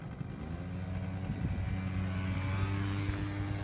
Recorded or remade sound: recorded